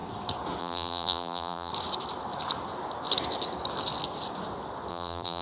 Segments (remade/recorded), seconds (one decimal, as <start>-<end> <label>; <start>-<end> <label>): 0.0-0.6 recorded; 0.6-1.7 remade; 1.7-4.9 recorded; 4.9-5.4 remade